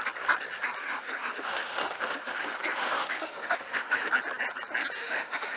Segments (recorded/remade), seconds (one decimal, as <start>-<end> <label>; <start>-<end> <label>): 0.0-0.8 recorded; 0.8-4.1 remade; 4.1-5.0 recorded; 5.0-5.6 remade